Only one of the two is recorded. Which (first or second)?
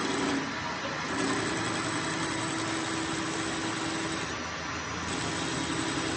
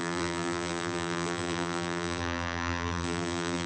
first